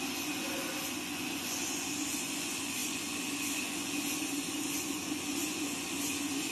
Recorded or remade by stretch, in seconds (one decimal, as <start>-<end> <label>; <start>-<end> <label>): 0.0-6.5 remade